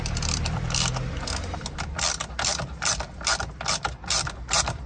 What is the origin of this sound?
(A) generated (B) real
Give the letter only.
A